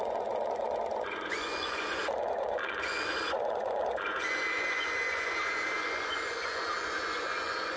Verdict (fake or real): fake